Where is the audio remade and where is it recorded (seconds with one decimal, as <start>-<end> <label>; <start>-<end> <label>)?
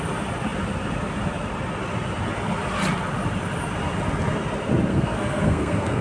0.0-4.9 recorded; 4.9-6.0 remade